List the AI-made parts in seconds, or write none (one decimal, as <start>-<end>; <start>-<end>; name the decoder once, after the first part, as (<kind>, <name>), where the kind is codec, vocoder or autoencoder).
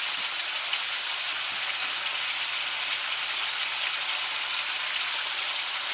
none